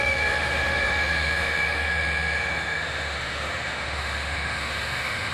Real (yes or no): no